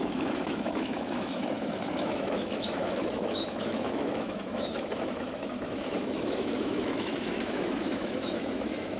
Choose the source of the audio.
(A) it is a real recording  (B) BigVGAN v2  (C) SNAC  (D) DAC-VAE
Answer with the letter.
D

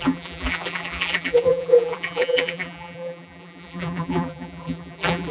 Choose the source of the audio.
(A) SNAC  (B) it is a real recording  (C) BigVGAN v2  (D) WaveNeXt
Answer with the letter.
C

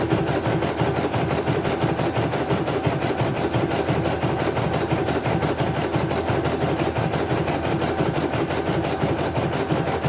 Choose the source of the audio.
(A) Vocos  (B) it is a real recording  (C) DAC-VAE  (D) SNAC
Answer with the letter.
B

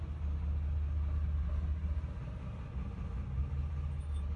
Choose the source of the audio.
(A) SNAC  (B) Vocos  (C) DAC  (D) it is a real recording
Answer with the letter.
D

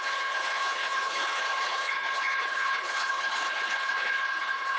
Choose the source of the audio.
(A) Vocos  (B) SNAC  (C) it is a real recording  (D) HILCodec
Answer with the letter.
D